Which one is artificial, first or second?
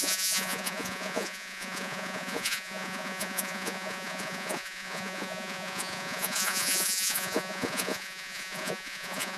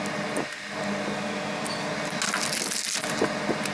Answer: first